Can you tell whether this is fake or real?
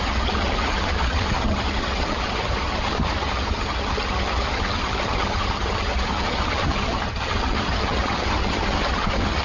fake